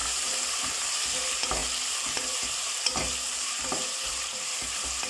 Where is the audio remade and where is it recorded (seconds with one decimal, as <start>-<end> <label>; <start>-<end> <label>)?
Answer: 0.0-5.1 remade